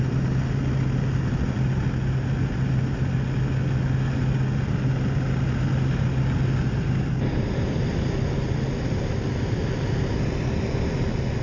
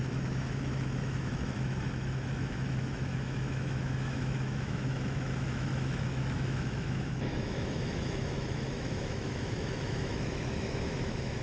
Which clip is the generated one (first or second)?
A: second